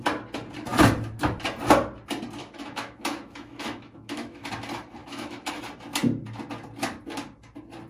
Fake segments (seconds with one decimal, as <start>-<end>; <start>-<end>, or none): 2.4-4.5; 5.0-5.5